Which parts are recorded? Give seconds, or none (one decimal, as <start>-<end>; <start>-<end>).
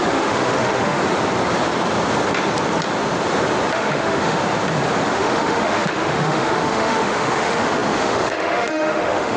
1.0-3.7; 4.4-5.1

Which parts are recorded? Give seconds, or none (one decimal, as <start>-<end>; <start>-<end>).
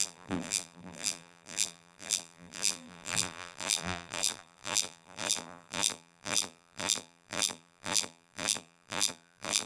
none